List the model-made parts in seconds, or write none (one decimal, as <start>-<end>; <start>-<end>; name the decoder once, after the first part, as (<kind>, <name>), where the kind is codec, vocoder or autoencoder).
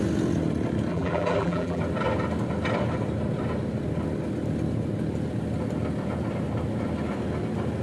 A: 0.9-1.8 (vocoder, BigVGAN v2)